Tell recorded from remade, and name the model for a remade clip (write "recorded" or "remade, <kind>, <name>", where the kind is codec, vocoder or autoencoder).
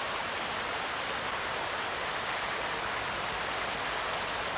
recorded